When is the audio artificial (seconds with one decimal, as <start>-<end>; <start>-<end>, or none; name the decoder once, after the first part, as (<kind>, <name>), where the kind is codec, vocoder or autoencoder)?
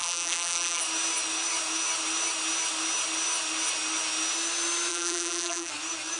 0.0-0.8 (vocoder, BigVGAN v2); 4.9-5.7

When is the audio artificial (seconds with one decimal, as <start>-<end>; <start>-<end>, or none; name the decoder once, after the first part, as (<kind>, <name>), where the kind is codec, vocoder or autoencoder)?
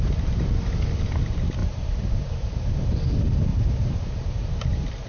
1.6-2.9 (vocoder, BigVGAN v2); 3.5-4.5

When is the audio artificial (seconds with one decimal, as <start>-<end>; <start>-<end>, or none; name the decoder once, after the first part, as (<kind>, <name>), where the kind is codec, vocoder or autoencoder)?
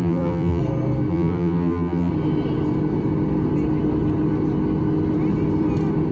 0.0-0.6 (vocoder, BigVGAN v2); 1.1-2.1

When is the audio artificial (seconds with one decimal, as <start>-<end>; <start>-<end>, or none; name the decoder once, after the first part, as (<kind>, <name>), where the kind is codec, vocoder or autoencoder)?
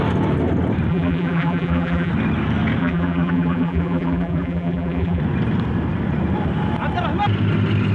0.9-2.1 (vocoder, BigVGAN v2); 2.8-5.2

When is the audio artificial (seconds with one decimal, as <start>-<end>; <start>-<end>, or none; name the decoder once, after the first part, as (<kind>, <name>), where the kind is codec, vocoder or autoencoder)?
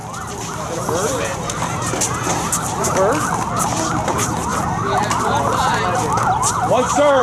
none